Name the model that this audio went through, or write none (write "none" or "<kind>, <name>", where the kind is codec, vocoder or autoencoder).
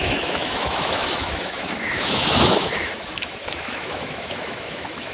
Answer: autoencoder, DAC-VAE